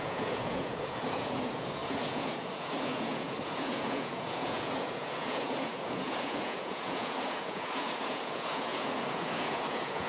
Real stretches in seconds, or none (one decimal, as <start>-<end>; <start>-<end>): none